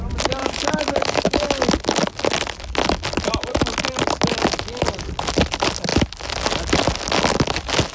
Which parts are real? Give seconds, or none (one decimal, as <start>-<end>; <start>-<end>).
0.0-0.4; 1.7-7.9